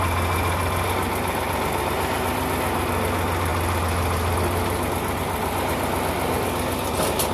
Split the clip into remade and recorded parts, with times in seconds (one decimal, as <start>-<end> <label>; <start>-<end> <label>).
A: 0.0-7.3 recorded